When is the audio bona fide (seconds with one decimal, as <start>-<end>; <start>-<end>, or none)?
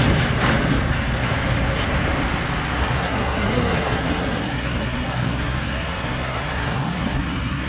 0.0-2.8